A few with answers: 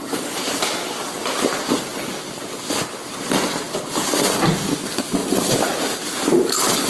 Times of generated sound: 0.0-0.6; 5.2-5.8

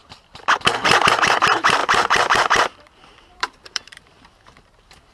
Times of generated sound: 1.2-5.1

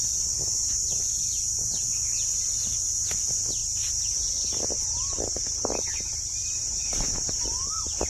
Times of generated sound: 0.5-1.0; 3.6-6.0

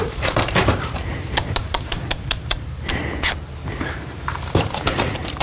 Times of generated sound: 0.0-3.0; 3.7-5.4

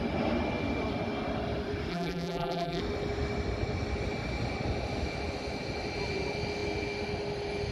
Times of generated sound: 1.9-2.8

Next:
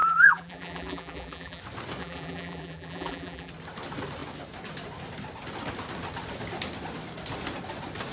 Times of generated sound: 0.0-1.6; 2.0-3.5

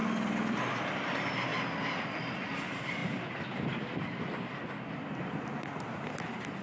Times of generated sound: 0.7-1.5; 2.2-3.0